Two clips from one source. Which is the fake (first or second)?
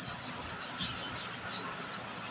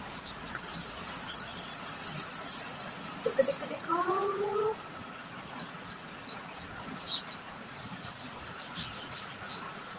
second